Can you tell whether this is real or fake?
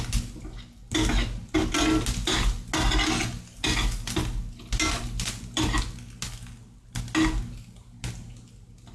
real